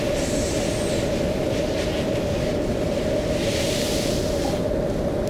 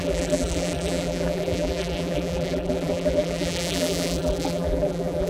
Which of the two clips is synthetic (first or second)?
second